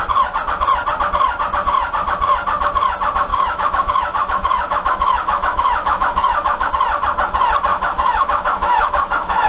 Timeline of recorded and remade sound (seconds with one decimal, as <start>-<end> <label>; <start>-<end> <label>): 0.0-3.3 recorded; 3.3-6.7 remade; 6.7-7.7 recorded; 7.7-9.5 remade

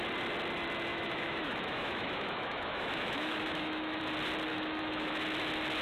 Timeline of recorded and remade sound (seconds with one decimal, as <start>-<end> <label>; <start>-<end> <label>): 0.0-0.9 recorded; 0.9-4.0 remade; 4.0-4.5 recorded; 4.5-5.1 remade; 5.1-5.8 recorded

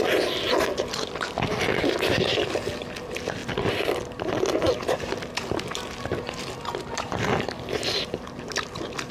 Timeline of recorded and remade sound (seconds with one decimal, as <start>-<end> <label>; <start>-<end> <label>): 0.0-9.1 recorded

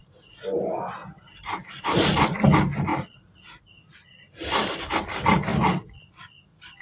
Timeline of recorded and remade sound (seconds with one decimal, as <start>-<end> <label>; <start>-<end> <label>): 0.0-6.8 recorded